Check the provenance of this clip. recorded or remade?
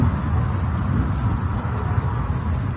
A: recorded